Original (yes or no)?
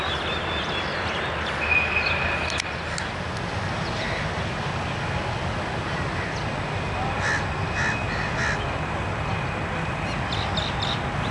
yes